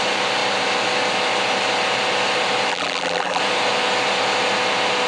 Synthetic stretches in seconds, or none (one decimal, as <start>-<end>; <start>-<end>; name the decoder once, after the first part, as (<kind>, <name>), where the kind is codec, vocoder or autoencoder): 2.7-3.4 (vocoder, BigVGAN v2)

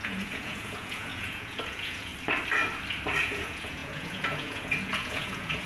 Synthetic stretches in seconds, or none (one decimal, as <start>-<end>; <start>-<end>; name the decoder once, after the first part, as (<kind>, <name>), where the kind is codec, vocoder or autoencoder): 0.0-2.1 (vocoder, Vocos); 3.2-5.7

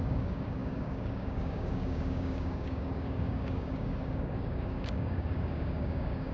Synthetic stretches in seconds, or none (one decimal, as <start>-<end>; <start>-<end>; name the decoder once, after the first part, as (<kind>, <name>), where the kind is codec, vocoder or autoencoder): 0.0-6.3 (codec, DAC)

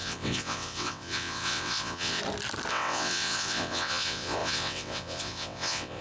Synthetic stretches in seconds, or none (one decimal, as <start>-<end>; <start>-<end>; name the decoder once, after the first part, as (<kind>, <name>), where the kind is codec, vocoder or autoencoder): 0.0-2.2 (vocoder, WaveNeXt); 2.7-6.0

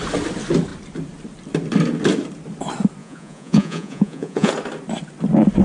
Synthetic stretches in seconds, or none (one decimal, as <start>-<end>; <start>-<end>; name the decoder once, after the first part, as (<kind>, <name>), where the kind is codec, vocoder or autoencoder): 3.0-4.5 (vocoder, Vocos)

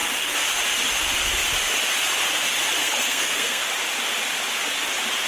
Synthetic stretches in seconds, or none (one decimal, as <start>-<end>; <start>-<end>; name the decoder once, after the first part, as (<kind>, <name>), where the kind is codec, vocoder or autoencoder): 2.8-3.6 (codec, SNAC)